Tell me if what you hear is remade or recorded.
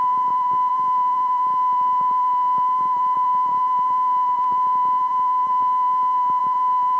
remade